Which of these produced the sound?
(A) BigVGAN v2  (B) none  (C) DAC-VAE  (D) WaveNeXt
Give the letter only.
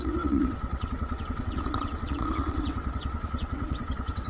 D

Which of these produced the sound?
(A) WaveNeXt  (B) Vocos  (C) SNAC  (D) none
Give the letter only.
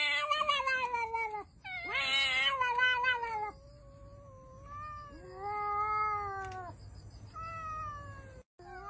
D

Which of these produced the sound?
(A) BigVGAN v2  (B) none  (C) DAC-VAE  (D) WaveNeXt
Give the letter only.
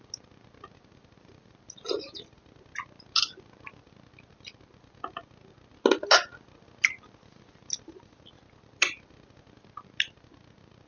B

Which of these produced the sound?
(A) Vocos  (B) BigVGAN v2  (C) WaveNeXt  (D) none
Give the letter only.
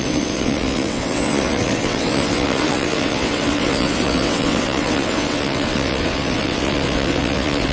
C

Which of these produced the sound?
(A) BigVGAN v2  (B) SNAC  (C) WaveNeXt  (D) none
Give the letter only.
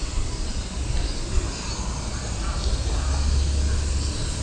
D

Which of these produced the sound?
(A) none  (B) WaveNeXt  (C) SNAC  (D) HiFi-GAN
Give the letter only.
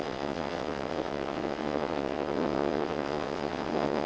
B